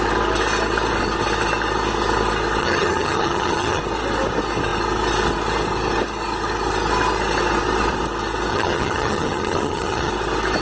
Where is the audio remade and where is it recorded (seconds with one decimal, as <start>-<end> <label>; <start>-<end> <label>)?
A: 0.0-2.6 recorded; 2.6-3.8 remade; 3.8-8.5 recorded; 8.5-10.1 remade; 10.1-10.6 recorded